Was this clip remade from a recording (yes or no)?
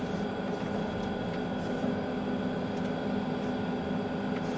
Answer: no